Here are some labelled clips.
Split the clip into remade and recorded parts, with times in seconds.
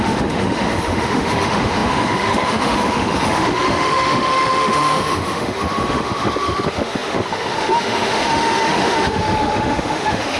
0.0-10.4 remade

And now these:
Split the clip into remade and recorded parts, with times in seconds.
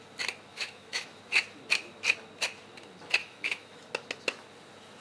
0.0-0.5 recorded; 0.5-1.2 remade; 1.2-3.2 recorded; 3.2-3.9 remade; 3.9-5.0 recorded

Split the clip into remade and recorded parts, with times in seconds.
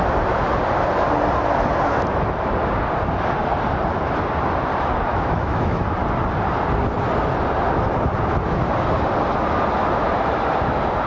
0.0-5.1 recorded; 5.1-5.8 remade; 5.8-11.1 recorded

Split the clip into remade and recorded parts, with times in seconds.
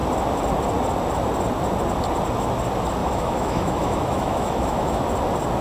0.0-3.0 recorded; 3.0-5.0 remade; 5.0-5.6 recorded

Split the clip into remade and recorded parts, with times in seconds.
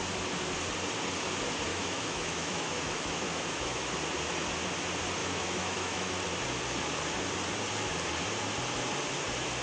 0.0-1.7 recorded; 1.7-3.9 remade; 3.9-5.2 recorded; 5.2-6.1 remade; 6.1-9.6 recorded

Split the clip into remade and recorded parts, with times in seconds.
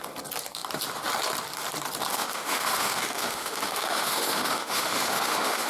0.0-2.1 recorded; 2.1-5.7 remade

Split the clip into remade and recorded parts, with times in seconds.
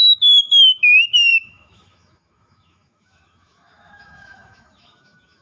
0.0-5.4 remade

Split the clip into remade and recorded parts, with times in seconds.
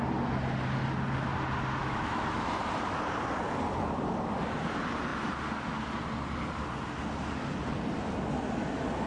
0.0-1.8 recorded; 1.8-2.6 remade; 2.6-9.1 recorded